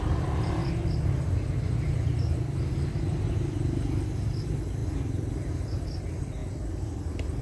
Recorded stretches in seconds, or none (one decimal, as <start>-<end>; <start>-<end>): 0.6-3.3; 4.8-5.5; 6.4-7.4